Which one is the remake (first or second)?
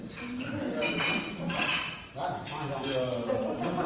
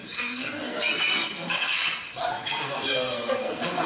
second